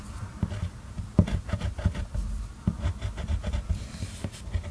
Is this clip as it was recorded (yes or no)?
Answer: yes